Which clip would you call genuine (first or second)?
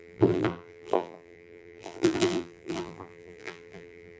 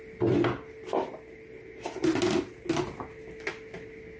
second